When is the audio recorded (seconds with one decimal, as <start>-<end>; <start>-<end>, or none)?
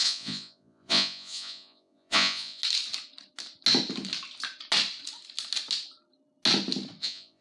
2.6-7.0